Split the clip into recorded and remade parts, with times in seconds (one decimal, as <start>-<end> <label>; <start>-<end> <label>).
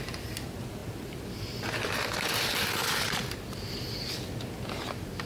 0.0-5.3 recorded